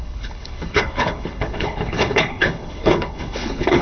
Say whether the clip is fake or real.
fake